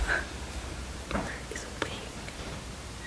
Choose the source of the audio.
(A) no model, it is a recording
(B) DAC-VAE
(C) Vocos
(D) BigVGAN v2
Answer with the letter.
D